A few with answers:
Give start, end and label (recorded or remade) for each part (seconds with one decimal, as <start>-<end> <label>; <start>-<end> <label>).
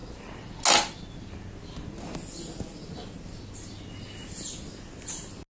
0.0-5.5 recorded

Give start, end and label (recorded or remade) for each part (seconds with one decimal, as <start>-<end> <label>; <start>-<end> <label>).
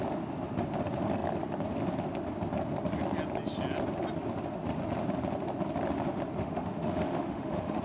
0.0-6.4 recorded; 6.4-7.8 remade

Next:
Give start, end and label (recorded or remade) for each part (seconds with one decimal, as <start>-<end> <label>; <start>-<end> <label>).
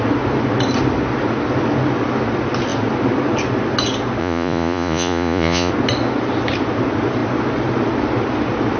0.0-4.2 recorded; 4.2-5.7 remade; 5.7-8.8 recorded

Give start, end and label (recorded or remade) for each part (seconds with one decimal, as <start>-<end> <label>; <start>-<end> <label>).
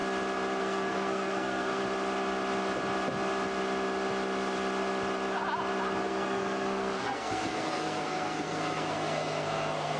0.0-0.6 recorded; 0.6-1.8 remade; 1.8-6.0 recorded; 6.0-10.0 remade